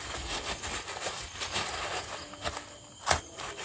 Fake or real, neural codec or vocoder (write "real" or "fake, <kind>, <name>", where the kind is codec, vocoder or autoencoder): real